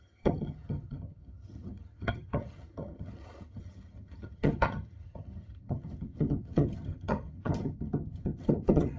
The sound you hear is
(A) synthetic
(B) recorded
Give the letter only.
A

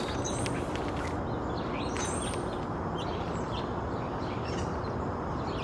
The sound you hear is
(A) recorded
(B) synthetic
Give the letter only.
A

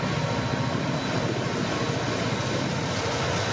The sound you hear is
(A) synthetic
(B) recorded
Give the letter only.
B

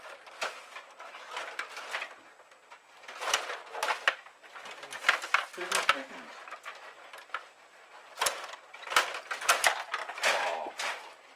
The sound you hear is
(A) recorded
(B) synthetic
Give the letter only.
A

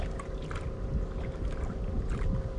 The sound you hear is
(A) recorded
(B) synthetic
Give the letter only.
A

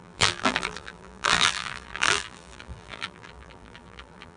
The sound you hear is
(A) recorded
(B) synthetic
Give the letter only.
B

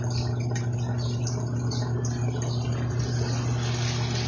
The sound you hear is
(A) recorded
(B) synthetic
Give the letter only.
A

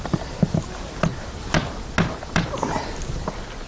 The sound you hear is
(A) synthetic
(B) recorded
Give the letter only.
B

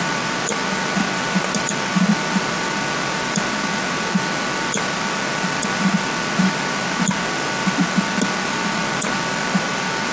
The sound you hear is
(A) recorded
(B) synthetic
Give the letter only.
A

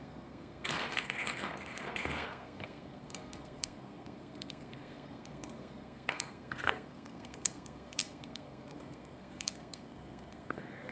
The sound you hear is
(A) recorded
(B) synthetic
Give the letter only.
B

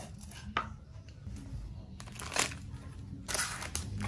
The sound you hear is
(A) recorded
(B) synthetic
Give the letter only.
A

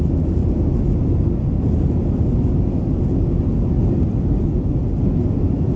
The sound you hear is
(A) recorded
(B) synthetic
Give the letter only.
A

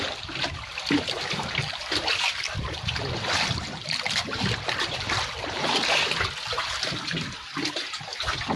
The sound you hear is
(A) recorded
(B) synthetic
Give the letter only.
A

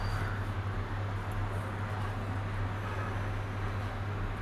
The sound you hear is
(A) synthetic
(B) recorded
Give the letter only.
B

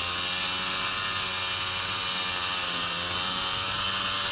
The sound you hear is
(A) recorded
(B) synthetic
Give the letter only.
A